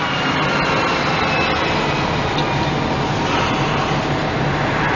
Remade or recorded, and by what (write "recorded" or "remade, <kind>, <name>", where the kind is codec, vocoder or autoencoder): recorded